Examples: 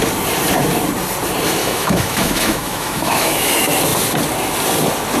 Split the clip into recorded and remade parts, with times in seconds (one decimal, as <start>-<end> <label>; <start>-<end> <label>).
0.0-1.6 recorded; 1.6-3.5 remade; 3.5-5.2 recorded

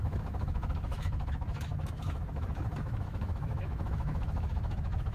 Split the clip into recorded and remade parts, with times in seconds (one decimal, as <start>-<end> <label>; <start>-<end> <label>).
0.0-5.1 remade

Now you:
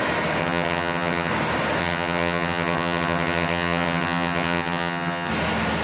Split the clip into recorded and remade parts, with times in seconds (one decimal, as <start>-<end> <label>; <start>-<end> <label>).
0.0-0.4 recorded; 0.4-1.3 remade; 1.3-1.8 recorded; 1.8-5.3 remade; 5.3-5.8 recorded